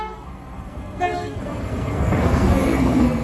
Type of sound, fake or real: fake